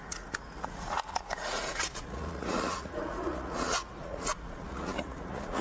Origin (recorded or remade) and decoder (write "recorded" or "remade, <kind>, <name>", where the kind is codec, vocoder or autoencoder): remade, vocoder, Vocos